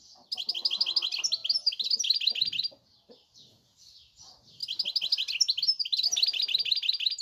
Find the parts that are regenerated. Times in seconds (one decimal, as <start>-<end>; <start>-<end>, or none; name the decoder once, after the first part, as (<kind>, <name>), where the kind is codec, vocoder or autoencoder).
none